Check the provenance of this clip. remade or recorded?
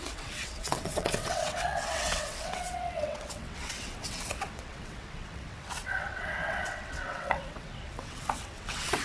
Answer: remade